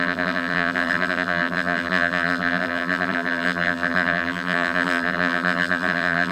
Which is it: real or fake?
fake